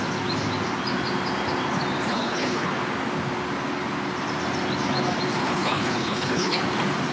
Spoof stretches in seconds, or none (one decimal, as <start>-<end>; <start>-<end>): 2.1-2.7; 5.4-6.6

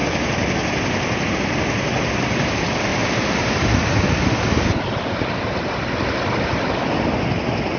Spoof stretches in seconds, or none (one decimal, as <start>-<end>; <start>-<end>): none

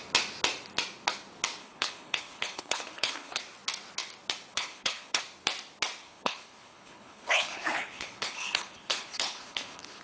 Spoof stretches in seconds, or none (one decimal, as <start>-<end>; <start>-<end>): 1.6-3.4; 4.5-5.2; 6.0-10.0

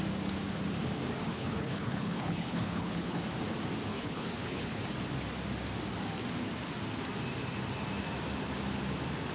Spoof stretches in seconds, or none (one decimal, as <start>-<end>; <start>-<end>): 1.3-3.2; 3.9-4.8